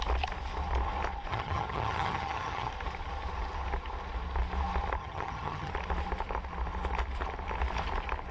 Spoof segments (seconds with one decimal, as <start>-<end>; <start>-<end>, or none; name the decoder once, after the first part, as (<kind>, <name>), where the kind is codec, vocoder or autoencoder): 1.3-2.7 (vocoder, HiFi-GAN); 5.0-5.7